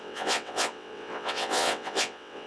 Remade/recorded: remade